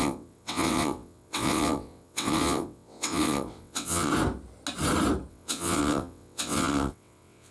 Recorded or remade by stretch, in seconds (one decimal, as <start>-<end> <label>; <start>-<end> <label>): 0.0-4.1 remade; 4.1-5.3 recorded; 5.3-7.5 remade